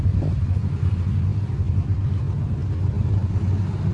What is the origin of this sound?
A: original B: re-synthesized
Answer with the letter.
A